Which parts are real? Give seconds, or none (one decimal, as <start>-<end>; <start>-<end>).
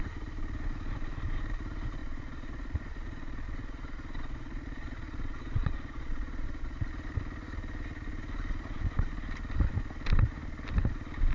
0.0-2.0; 6.9-11.3